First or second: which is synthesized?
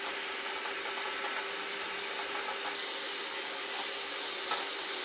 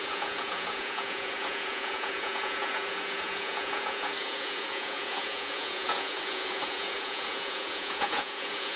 second